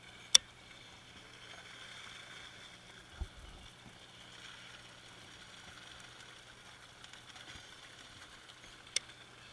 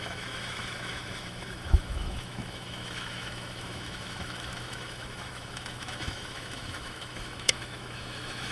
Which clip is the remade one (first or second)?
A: second